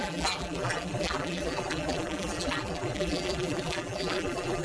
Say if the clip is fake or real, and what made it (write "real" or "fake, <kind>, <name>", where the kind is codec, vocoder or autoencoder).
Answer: fake, vocoder, BigVGAN v2